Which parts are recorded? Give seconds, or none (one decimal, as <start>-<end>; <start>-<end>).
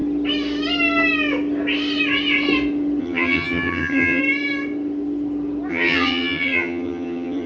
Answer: 0.0-3.0; 4.2-5.7